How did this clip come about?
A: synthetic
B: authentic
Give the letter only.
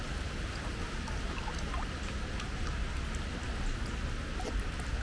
B